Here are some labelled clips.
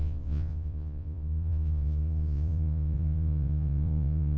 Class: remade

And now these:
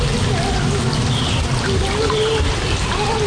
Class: recorded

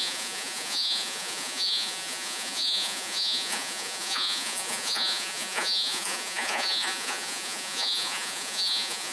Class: remade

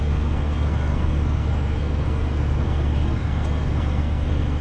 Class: remade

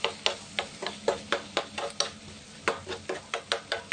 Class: recorded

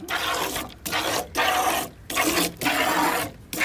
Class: recorded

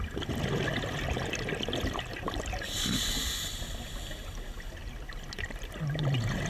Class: recorded